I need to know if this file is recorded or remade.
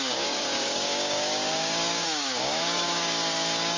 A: remade